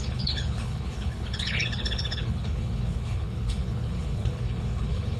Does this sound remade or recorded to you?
remade